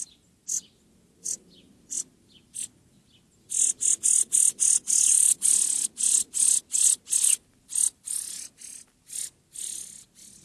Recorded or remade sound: recorded